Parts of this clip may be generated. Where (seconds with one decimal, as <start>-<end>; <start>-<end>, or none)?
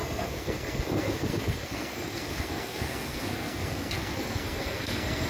0.0-5.3